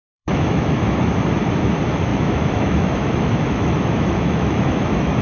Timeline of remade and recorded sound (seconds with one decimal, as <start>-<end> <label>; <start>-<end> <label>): 0.0-1.1 remade; 1.1-2.1 recorded; 2.1-5.2 remade